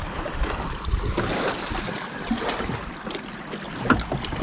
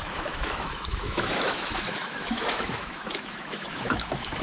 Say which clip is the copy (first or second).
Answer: second